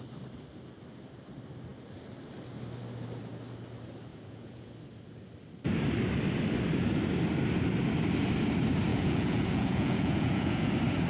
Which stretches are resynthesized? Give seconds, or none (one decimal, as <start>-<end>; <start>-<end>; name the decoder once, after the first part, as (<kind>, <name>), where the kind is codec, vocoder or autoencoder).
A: 4.1-4.7 (vocoder, Vocos); 8.9-10.7